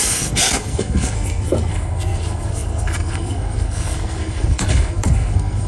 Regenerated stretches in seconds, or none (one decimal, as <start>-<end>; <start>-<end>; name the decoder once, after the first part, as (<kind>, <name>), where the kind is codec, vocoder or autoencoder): 0.0-5.7 (codec, SNAC)